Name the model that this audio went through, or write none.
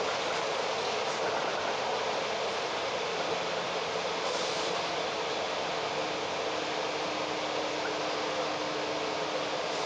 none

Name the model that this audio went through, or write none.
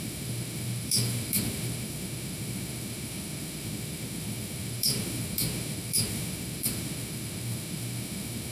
autoencoder, DAC-VAE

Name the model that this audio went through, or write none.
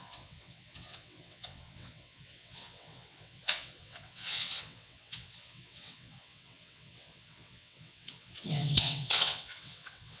vocoder, WaveNeXt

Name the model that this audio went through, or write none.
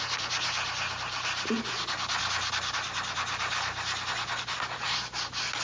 none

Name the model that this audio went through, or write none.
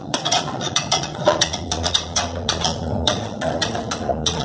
vocoder, Vocos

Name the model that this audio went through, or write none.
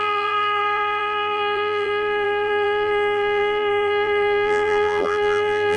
vocoder, BigVGAN v2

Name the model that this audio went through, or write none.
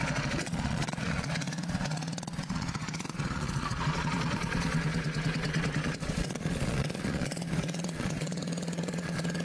vocoder, Vocos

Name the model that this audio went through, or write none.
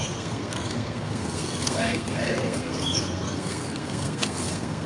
codec, SNAC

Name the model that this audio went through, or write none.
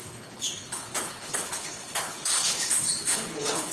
codec, HILCodec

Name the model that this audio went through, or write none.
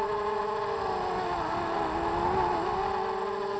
none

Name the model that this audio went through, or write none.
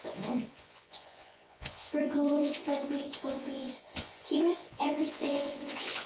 vocoder, Vocos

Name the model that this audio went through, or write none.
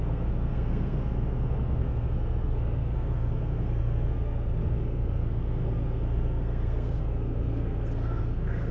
codec, SNAC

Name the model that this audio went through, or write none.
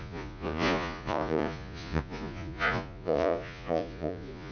vocoder, Vocos